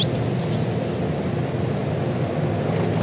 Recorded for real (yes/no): yes